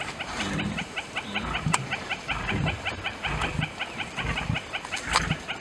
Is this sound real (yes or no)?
yes